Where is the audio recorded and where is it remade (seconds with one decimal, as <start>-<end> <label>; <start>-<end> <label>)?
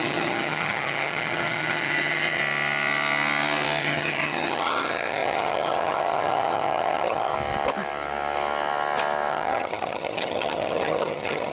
0.0-2.4 remade; 2.4-3.8 recorded; 3.8-7.3 remade; 7.3-9.3 recorded; 9.3-11.5 remade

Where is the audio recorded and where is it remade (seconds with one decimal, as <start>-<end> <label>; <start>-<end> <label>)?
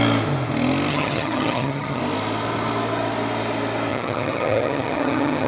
0.0-0.9 recorded; 0.9-2.0 remade; 2.0-3.9 recorded; 3.9-5.5 remade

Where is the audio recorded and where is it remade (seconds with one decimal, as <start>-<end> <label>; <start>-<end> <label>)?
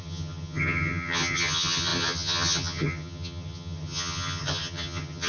0.0-5.3 remade